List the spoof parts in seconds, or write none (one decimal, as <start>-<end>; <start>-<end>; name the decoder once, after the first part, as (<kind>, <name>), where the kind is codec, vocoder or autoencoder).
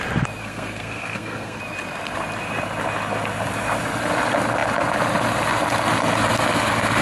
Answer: 0.4-1.6 (codec, SNAC)